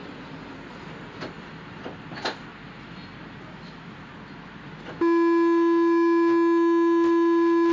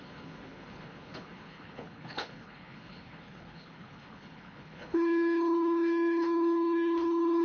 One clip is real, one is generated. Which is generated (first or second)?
second